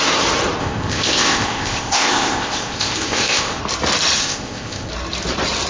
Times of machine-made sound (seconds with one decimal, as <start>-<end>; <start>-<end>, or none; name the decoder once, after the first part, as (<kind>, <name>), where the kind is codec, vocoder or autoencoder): 0.6-3.6 (codec, ZipCodec); 4.2-4.9